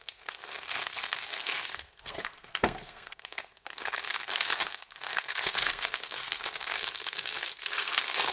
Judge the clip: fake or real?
fake